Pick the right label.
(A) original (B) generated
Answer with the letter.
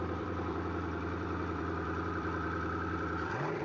B